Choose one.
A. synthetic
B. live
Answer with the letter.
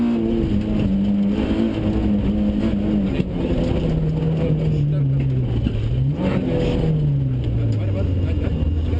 B